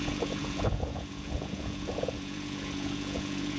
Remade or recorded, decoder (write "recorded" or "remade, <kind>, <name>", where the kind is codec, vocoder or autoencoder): remade, vocoder, Vocos